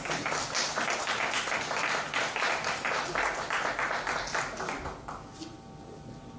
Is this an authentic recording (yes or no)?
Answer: yes